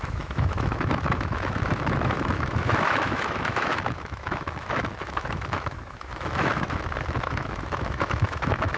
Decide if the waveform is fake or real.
fake